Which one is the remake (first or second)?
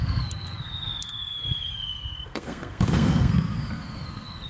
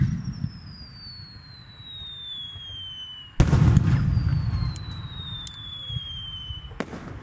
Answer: first